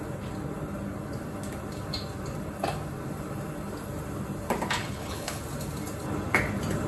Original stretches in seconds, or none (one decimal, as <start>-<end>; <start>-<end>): 0.0-4.8; 5.4-6.9